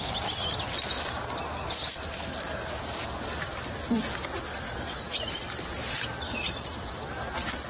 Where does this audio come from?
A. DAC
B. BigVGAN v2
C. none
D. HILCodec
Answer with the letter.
B